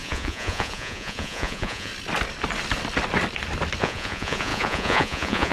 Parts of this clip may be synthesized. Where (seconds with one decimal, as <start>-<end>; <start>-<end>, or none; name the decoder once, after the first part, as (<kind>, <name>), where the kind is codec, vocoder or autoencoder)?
0.0-1.9 (vocoder, Vocos); 3.8-5.5